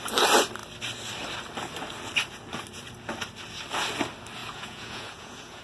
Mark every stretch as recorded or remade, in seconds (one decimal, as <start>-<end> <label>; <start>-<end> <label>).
0.0-4.4 recorded; 4.4-5.6 remade